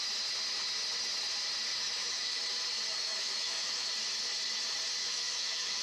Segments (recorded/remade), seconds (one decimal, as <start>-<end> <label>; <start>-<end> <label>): 0.0-1.7 recorded; 1.7-2.4 remade; 2.4-2.9 recorded; 2.9-3.9 remade; 3.9-5.0 recorded; 5.0-5.8 remade

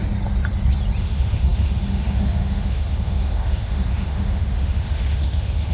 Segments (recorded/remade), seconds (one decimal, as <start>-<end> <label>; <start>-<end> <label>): 0.0-1.0 recorded; 1.0-5.7 remade

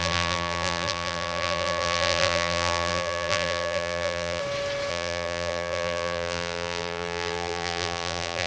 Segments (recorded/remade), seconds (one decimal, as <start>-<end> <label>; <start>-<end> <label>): 0.0-4.4 remade; 4.4-4.9 recorded; 4.9-8.5 remade

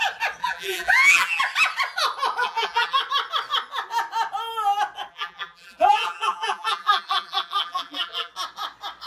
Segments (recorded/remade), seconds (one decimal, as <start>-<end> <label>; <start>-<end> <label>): 0.0-0.4 recorded; 0.4-1.4 remade; 1.4-2.4 recorded; 2.4-3.0 remade; 3.0-5.1 recorded; 5.1-8.3 remade; 8.3-9.1 recorded

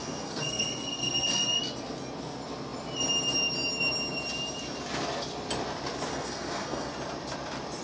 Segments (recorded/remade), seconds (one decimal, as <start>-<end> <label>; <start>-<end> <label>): 0.0-1.6 remade; 1.6-6.1 recorded; 6.1-6.9 remade; 6.9-7.8 recorded

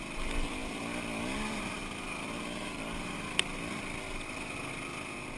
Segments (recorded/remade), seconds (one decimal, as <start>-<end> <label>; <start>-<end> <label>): 0.0-5.4 recorded